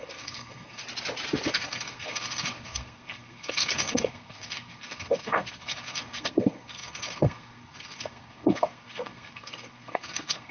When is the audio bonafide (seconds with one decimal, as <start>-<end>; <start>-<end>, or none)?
0.8-1.5